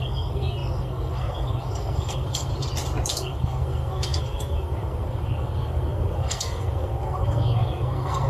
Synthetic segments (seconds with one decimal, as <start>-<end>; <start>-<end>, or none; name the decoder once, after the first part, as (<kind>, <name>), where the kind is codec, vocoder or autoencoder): 0.0-2.5 (codec, SNAC); 3.1-8.3